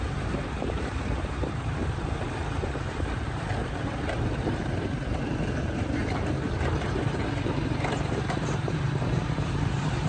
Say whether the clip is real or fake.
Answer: fake